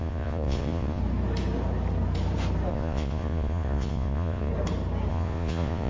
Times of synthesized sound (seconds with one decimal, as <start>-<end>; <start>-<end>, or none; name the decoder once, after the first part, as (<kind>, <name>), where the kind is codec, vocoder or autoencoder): 0.0-1.0 (vocoder, Vocos); 2.7-4.5; 5.1-5.9